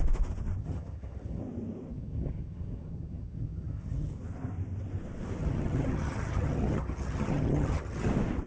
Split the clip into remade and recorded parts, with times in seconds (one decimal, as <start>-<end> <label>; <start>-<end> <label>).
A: 0.0-0.6 recorded; 0.6-1.4 remade; 1.4-1.9 recorded; 1.9-4.2 remade; 4.2-5.4 recorded; 5.4-8.1 remade; 8.1-8.5 recorded